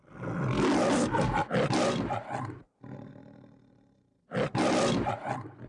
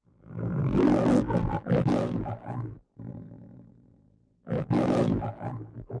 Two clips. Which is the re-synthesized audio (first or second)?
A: second